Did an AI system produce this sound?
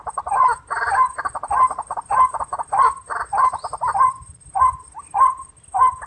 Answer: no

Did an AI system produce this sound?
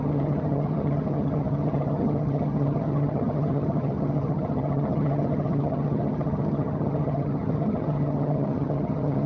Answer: yes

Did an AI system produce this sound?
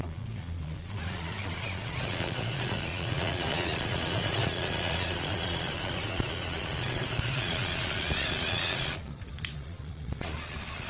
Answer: yes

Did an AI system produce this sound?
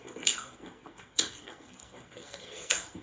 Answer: yes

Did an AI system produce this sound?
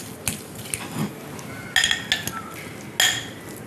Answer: no